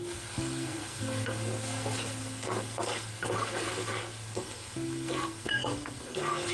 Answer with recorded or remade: remade